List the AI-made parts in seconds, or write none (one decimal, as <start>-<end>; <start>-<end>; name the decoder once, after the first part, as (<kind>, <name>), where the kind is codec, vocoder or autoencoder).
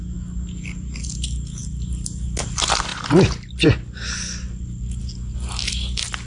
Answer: none